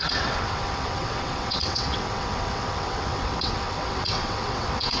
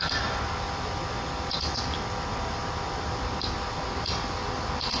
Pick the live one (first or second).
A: second